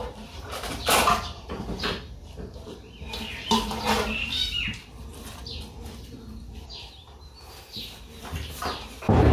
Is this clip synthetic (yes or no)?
yes